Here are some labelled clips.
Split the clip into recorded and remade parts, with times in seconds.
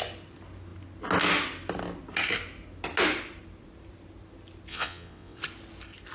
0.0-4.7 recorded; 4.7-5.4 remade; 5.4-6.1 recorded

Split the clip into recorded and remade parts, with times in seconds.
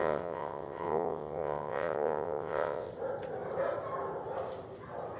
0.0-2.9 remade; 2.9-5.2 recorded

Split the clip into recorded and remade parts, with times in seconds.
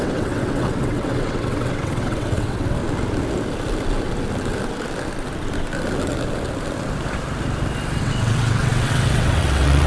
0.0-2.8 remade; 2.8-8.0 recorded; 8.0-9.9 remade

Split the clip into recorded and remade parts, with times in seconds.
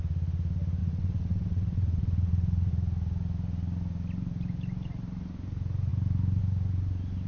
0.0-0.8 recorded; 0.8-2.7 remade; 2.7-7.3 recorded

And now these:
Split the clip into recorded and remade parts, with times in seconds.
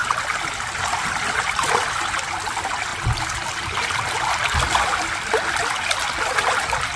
0.0-7.0 recorded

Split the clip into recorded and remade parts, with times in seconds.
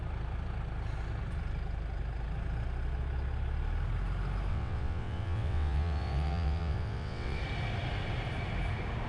0.0-4.5 recorded; 4.5-7.4 remade; 7.4-9.1 recorded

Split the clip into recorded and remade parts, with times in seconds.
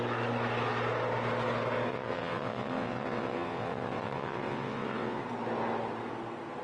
0.0-1.9 recorded; 1.9-5.2 remade; 5.2-6.6 recorded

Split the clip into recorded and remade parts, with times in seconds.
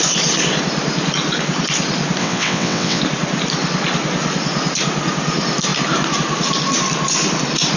0.0-2.2 recorded; 2.2-3.0 remade; 3.0-7.8 recorded